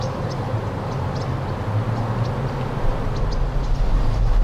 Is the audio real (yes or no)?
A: yes